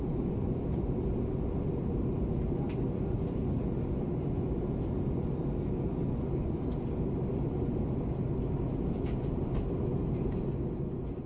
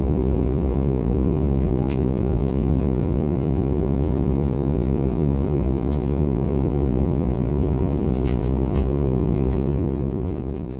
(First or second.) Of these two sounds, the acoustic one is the first